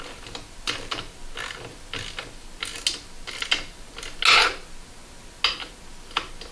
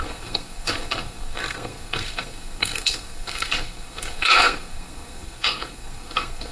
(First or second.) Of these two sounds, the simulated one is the second